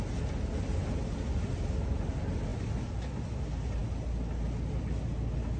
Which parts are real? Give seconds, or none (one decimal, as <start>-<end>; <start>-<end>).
0.0-5.6